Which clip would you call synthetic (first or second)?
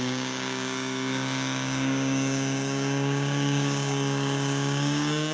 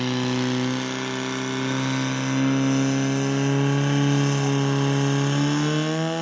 first